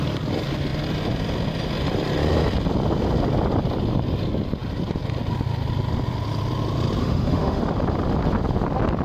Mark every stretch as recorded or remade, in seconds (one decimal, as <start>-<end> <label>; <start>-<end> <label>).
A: 0.0-7.0 recorded; 7.0-7.6 remade; 7.6-9.0 recorded